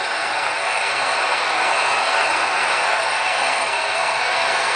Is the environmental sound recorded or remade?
remade